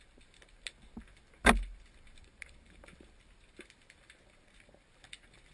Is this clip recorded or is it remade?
recorded